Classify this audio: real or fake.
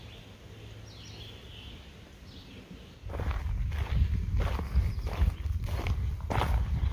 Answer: real